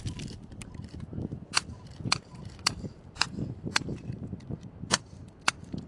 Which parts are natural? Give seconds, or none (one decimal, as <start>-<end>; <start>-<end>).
0.0-2.3; 5.2-5.9